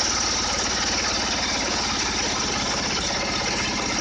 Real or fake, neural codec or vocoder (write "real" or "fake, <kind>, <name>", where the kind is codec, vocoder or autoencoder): real